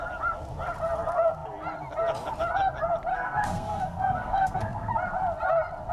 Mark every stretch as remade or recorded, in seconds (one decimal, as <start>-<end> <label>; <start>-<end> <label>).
0.0-3.1 recorded; 3.1-4.9 remade; 4.9-5.9 recorded